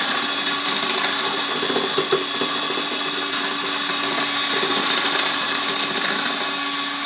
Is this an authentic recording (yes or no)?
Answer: yes